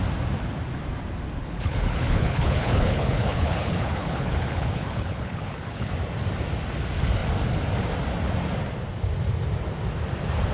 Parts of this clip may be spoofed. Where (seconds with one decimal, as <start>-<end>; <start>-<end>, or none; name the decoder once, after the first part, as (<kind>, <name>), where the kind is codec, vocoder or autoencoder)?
1.4-5.9 (codec, HILCodec)